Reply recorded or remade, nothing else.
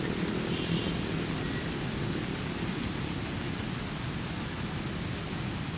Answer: recorded